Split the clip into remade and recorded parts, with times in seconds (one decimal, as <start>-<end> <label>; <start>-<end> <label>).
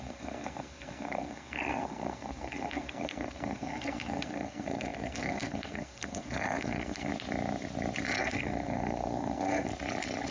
0.0-7.1 remade; 7.1-8.2 recorded; 8.2-9.7 remade; 9.7-10.3 recorded